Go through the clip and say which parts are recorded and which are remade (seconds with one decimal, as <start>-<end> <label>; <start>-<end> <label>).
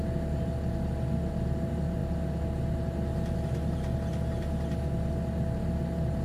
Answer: 0.0-6.2 recorded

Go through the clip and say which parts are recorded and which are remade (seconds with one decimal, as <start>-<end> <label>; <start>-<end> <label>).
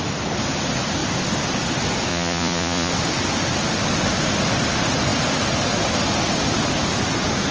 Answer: 0.0-2.1 recorded; 2.1-2.9 remade; 2.9-7.5 recorded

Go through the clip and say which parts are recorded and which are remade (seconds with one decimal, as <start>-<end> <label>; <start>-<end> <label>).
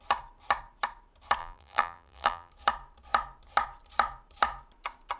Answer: 0.0-1.4 recorded; 1.4-2.5 remade; 2.5-5.2 recorded